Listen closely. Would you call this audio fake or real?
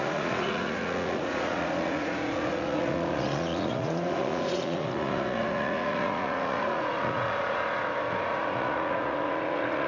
fake